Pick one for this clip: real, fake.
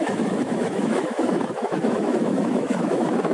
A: fake